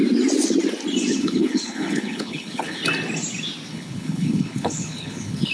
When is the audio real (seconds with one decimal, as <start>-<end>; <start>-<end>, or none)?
0.0-1.1; 2.8-3.7